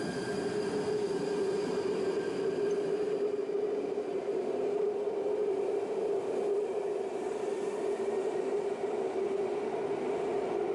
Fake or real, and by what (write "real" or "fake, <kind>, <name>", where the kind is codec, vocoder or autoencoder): real